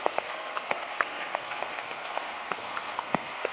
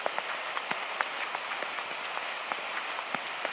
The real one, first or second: second